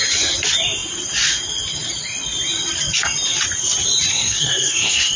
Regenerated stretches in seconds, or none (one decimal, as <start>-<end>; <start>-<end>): 4.1-5.2